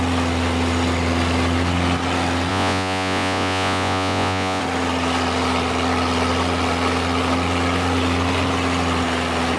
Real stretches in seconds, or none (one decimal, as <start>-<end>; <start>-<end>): 0.0-2.5; 4.6-9.6